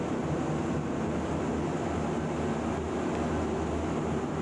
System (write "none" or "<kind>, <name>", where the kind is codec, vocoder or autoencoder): none